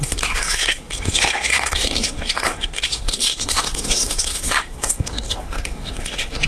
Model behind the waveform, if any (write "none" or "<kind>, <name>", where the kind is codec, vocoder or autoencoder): codec, SNAC